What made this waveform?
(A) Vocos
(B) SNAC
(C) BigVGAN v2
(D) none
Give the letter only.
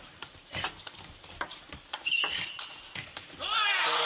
D